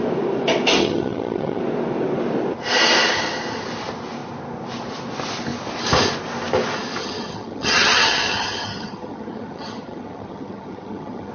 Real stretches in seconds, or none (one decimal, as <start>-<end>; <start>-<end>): 0.0-0.8; 1.6-7.0